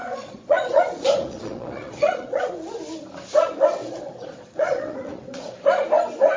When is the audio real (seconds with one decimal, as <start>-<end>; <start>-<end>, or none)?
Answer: 2.5-3.8; 5.5-6.4

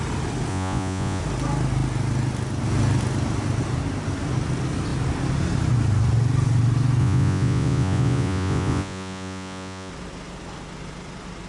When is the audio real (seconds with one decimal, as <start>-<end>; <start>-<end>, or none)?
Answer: 0.0-0.5; 1.2-7.0; 9.9-11.5

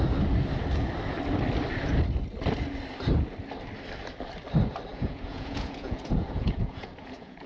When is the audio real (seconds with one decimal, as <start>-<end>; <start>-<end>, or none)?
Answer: 0.0-4.9

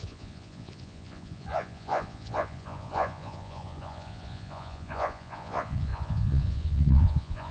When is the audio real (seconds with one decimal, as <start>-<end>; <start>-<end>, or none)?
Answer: none

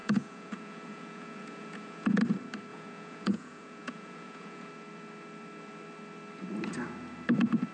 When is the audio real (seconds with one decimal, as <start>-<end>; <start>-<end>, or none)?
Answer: 2.2-2.7; 4.7-7.7

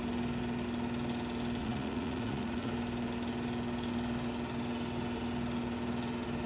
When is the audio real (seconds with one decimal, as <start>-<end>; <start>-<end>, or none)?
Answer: 0.0-1.6; 2.7-6.5